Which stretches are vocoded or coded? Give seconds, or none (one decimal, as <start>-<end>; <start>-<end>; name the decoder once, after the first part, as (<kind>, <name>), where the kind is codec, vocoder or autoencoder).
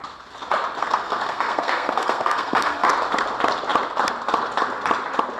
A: 0.8-2.9 (codec, SNAC)